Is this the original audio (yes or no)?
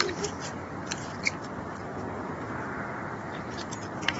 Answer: yes